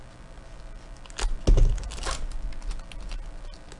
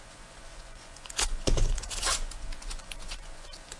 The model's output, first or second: second